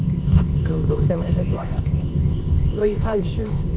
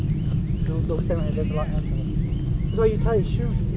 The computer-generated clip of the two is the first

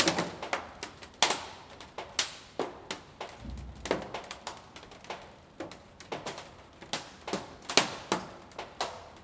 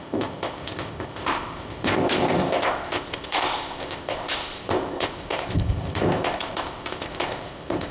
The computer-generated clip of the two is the second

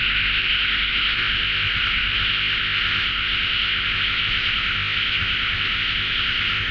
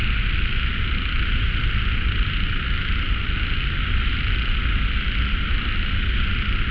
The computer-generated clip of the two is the first